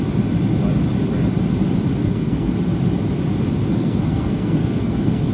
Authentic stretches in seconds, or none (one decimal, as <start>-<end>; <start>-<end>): 0.0-2.0; 2.5-3.7